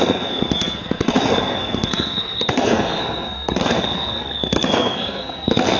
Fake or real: fake